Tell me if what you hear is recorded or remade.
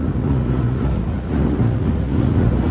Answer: remade